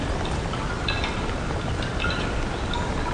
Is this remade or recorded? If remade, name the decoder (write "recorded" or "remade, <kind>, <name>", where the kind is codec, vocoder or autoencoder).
recorded